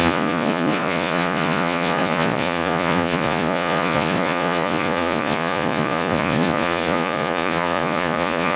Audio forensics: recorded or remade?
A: remade